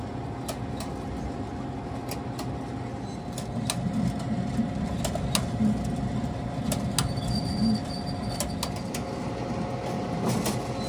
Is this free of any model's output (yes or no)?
yes